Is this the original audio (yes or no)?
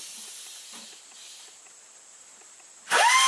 yes